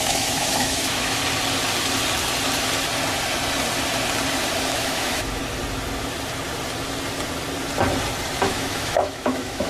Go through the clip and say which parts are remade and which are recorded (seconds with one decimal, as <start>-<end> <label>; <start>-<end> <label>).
0.0-1.2 remade; 1.2-4.6 recorded; 4.6-5.4 remade; 5.4-8.4 recorded; 8.4-9.7 remade